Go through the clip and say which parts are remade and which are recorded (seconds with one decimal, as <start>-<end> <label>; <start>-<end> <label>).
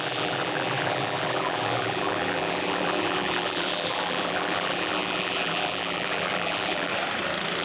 0.0-6.9 remade; 6.9-7.6 recorded